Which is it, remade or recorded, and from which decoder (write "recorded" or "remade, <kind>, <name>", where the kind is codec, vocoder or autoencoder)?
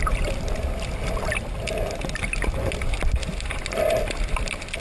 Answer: recorded